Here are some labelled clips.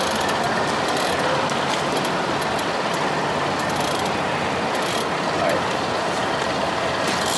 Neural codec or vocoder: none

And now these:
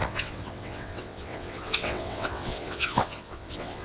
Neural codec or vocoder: vocoder, WaveNeXt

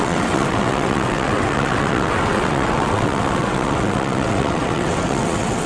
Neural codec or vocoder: vocoder, WaveNeXt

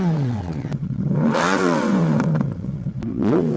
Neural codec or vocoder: vocoder, WaveNeXt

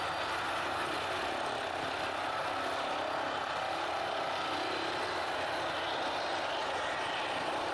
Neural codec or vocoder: none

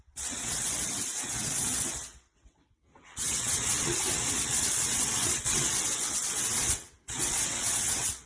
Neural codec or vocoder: vocoder, WaveNeXt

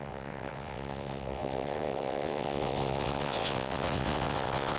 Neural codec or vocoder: vocoder, WaveNeXt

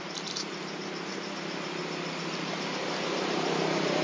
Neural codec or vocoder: none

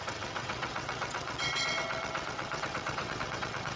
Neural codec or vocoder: vocoder, WaveNeXt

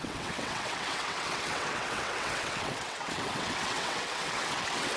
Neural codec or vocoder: vocoder, WaveNeXt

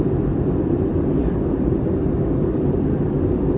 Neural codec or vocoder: none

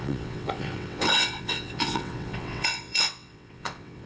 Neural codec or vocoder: vocoder, WaveNeXt